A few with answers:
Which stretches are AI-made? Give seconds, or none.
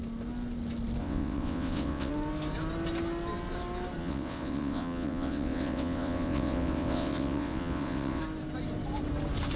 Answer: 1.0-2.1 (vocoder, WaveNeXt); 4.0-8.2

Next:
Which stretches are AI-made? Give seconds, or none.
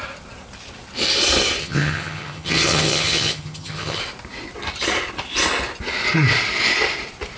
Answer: 1.6-4.0 (vocoder, HiFi-GAN)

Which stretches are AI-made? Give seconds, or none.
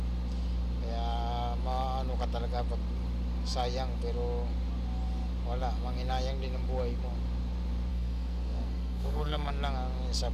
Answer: 7.9-9.5 (codec, SNAC)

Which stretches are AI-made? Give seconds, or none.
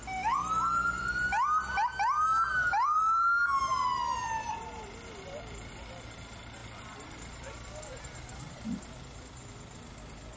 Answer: 6.6-7.8 (vocoder, BigVGAN v2)